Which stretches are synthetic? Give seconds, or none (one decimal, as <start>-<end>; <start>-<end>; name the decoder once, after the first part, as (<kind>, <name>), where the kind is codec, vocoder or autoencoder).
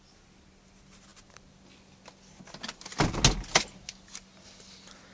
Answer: none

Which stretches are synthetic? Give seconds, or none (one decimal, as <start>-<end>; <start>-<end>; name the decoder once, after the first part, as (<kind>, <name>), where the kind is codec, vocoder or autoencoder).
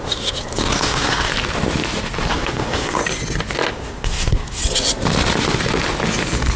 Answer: 0.0-1.3 (codec, SNAC); 2.3-3.0; 3.7-4.6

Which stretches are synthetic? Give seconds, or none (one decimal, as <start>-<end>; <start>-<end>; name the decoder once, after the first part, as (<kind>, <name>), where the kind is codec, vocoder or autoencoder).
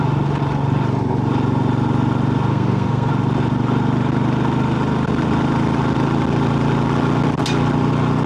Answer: 2.5-3.1 (codec, SNAC)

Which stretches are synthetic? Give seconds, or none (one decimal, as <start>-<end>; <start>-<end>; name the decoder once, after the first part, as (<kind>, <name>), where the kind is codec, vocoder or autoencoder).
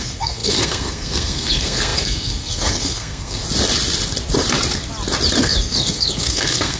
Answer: 0.0-3.4 (codec, SNAC); 5.4-6.8